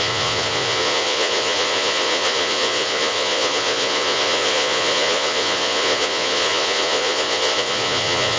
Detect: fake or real fake